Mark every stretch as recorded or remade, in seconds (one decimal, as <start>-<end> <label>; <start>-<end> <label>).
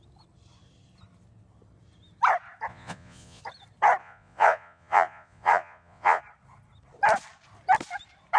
0.0-2.7 recorded; 2.7-3.4 remade; 3.4-4.0 recorded; 4.0-6.2 remade; 6.2-8.4 recorded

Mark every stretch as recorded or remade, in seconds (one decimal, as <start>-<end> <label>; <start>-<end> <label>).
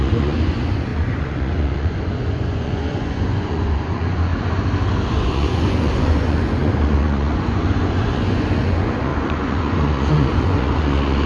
0.0-4.3 remade; 4.3-5.0 recorded; 5.0-11.3 remade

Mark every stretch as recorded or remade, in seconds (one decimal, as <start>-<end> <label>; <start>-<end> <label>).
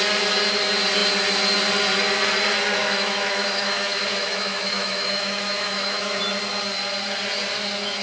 0.0-2.8 recorded; 2.8-6.2 remade; 6.2-8.0 recorded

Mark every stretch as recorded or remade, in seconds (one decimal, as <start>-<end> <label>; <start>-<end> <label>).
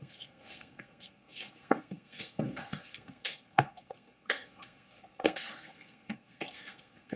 0.0-7.2 remade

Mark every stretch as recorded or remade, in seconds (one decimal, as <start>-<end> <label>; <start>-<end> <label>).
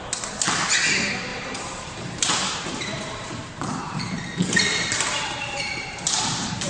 0.0-1.3 recorded; 1.3-3.4 remade; 3.4-4.7 recorded; 4.7-6.7 remade